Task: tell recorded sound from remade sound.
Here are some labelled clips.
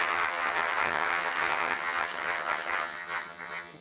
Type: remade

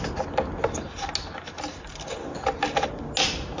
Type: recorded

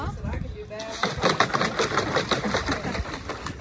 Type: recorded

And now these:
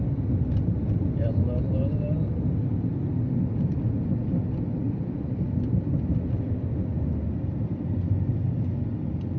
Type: recorded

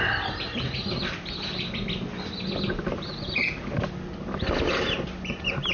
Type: recorded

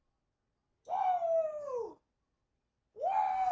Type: recorded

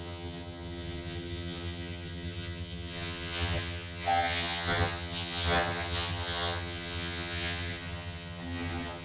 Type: remade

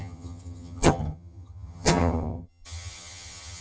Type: remade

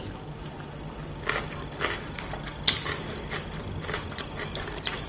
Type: recorded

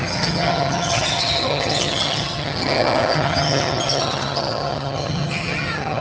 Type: remade